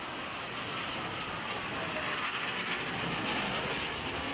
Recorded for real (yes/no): yes